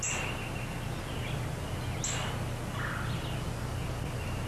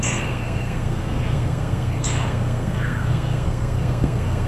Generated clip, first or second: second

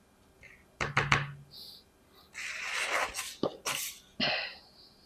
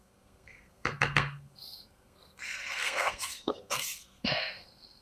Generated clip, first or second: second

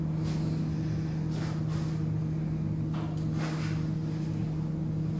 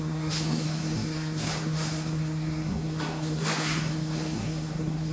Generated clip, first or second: second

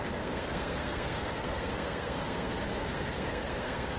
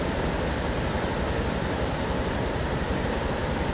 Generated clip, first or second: first